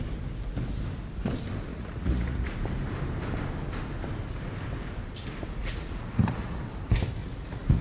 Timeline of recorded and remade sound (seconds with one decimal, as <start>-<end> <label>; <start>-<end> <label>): 0.0-1.7 recorded; 1.7-2.6 remade; 2.6-5.6 recorded; 5.6-6.6 remade; 6.6-7.2 recorded; 7.2-7.8 remade